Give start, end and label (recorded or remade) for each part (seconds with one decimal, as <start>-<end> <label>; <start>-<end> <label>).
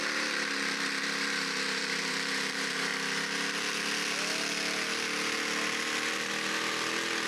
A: 0.0-2.9 remade; 2.9-7.3 recorded